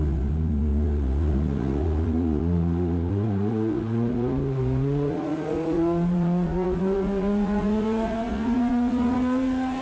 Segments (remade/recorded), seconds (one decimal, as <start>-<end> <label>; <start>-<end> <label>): 0.0-9.8 remade